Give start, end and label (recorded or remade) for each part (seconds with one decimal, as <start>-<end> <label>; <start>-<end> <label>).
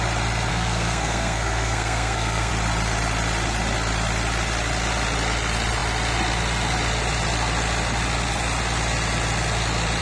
0.0-0.5 recorded; 0.5-2.5 remade; 2.5-10.0 recorded